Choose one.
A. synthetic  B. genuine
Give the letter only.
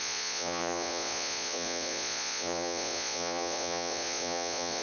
A